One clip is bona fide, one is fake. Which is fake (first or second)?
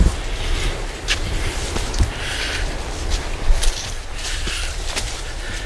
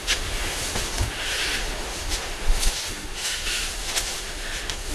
second